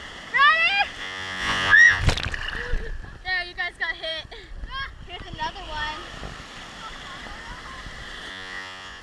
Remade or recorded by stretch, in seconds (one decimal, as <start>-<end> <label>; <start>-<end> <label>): 0.0-1.0 recorded; 1.0-2.0 remade; 2.0-8.3 recorded; 8.3-9.0 remade